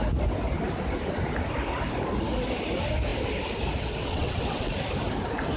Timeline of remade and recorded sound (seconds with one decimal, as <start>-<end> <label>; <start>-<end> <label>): 0.0-4.0 recorded; 4.0-4.7 remade; 4.7-5.6 recorded